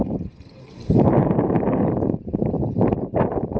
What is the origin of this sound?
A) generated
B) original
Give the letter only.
A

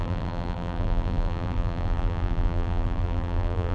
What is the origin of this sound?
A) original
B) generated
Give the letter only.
B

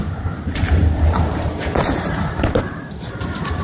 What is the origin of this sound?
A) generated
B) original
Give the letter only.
A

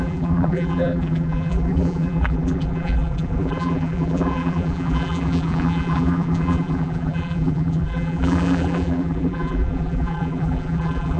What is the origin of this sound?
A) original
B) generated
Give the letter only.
B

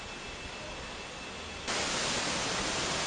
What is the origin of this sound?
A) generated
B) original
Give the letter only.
B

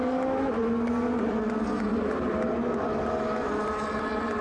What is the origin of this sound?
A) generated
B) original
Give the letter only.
B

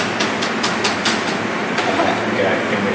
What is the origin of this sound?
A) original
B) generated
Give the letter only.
A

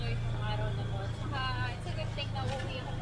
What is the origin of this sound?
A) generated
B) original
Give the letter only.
B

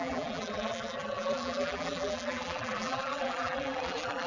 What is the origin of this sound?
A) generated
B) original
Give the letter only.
A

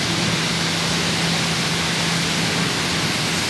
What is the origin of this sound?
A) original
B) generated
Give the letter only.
A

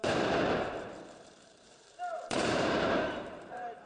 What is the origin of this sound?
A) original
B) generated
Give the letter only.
B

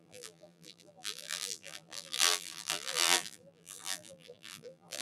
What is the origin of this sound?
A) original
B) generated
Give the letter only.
B